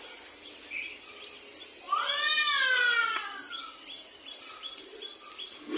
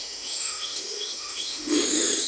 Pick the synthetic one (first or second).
second